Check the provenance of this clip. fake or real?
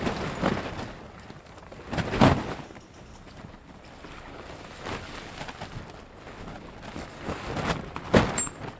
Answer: real